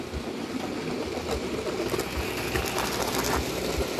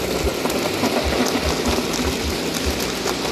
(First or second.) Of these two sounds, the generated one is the second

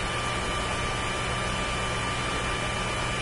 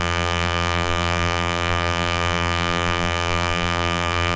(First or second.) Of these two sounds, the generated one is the second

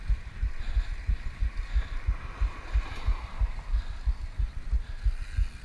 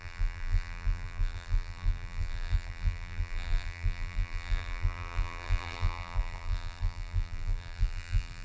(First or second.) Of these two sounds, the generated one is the second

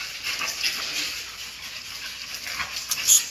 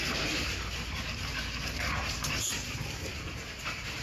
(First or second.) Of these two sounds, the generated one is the second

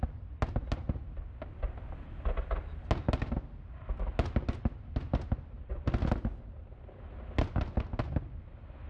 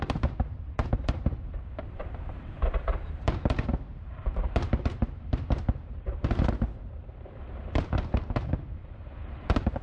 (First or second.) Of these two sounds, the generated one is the second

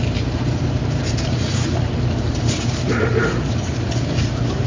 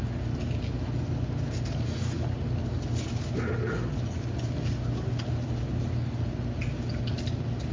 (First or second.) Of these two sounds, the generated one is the first